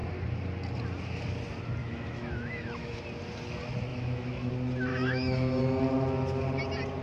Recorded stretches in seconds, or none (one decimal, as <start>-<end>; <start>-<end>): 0.0-1.8; 3.0-3.9; 4.5-4.9; 5.6-7.0